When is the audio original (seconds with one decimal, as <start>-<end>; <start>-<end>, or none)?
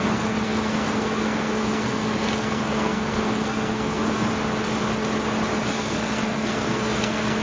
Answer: 4.3-5.7